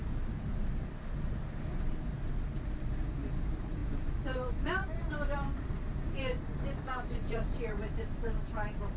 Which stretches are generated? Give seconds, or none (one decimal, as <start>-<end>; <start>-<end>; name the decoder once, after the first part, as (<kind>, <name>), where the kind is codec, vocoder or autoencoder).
1.9-9.0 (vocoder, BigVGAN v2)